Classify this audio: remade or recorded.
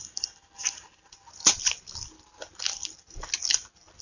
recorded